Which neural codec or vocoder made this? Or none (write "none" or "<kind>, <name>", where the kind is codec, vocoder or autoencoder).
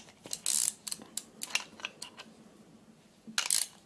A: none